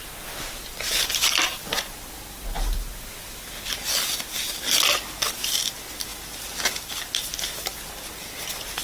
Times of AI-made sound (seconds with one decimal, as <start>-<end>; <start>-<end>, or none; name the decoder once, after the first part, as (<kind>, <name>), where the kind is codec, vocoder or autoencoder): none